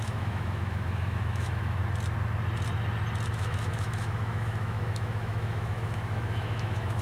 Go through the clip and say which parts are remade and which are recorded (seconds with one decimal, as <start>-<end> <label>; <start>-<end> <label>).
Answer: 0.0-1.8 remade; 1.8-3.3 recorded; 3.3-7.0 remade